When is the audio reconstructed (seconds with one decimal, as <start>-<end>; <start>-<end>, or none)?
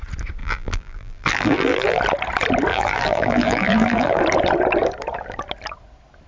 0.4-2.0; 2.7-4.2